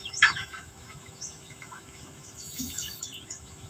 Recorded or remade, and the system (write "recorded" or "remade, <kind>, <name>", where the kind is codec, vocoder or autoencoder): remade, autoencoder, DAC-VAE